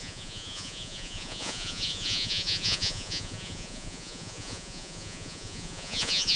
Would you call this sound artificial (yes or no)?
yes